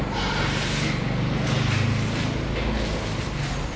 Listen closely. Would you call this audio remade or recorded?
recorded